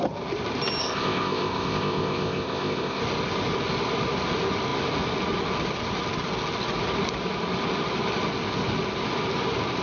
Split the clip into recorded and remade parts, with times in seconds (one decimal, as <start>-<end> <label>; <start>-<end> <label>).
0.0-0.8 recorded; 0.8-3.0 remade; 3.0-9.8 recorded